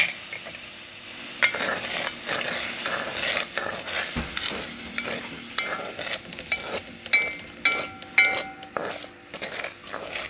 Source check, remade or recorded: recorded